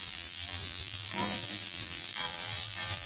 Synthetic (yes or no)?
yes